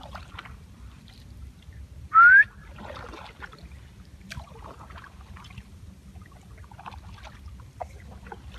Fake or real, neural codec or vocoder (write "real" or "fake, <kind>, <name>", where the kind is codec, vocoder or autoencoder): real